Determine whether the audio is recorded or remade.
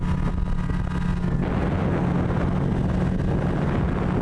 recorded